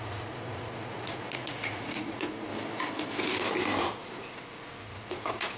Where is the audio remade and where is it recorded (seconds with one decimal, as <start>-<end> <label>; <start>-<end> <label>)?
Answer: 0.0-2.5 remade; 2.5-3.8 recorded; 3.8-5.6 remade